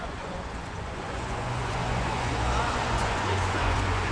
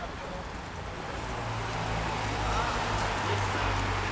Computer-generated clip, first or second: first